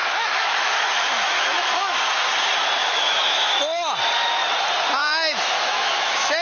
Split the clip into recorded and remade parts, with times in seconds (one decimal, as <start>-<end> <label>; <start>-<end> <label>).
0.0-2.0 remade; 2.0-2.8 recorded; 2.8-3.6 remade; 3.6-5.0 recorded; 5.0-6.4 remade